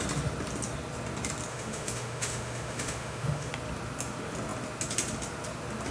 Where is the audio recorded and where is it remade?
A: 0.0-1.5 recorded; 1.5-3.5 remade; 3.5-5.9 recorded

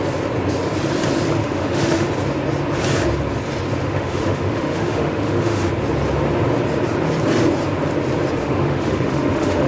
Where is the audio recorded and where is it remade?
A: 0.0-1.4 recorded; 1.4-2.1 remade; 2.1-3.8 recorded; 3.8-5.7 remade; 5.7-8.4 recorded; 8.4-9.7 remade